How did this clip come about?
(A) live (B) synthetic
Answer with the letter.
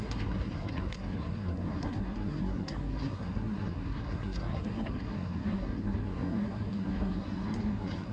B